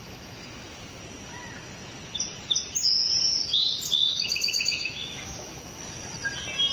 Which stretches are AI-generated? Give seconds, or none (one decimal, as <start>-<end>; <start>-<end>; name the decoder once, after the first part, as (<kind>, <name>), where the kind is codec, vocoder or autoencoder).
0.0-1.0 (autoencoder, DAC-VAE); 4.1-5.8